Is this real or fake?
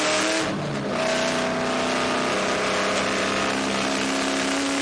real